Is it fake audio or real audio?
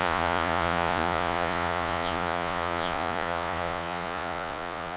fake